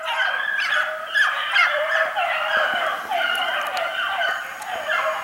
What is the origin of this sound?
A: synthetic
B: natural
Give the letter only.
A